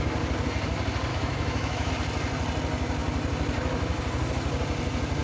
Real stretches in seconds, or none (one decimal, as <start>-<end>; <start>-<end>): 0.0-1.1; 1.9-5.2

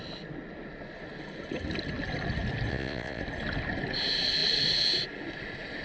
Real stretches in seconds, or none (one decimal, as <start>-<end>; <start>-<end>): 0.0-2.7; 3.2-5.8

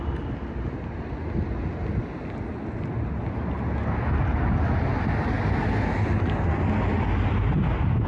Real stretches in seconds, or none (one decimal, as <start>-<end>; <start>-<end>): 0.0-8.1